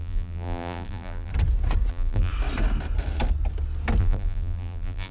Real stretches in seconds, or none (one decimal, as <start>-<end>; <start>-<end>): 1.3-1.9; 2.3-4.0